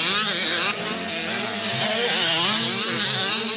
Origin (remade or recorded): recorded